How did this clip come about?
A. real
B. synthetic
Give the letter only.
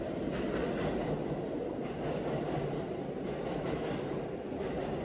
A